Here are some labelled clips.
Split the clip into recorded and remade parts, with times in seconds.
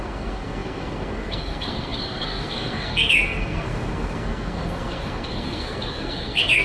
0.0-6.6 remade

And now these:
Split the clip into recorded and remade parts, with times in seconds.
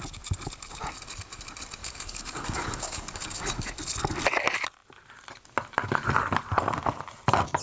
0.0-1.8 recorded; 1.8-3.7 remade; 3.7-7.6 recorded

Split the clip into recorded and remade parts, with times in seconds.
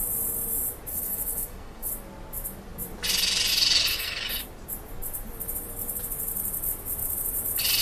0.0-0.9 recorded; 0.9-1.9 remade; 1.9-3.9 recorded; 3.9-4.4 remade; 4.4-7.8 recorded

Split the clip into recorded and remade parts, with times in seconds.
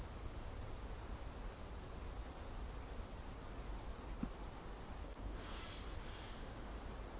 0.0-5.0 recorded; 5.0-5.6 remade; 5.6-7.2 recorded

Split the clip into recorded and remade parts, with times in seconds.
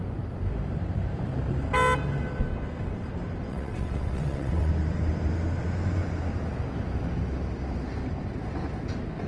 0.0-3.5 recorded; 3.5-4.7 remade; 4.7-9.3 recorded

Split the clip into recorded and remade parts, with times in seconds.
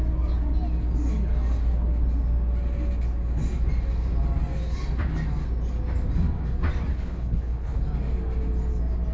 0.0-6.9 recorded; 6.9-7.8 remade; 7.8-9.1 recorded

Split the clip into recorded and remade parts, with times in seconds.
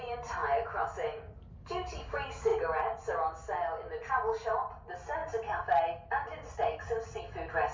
0.0-7.7 recorded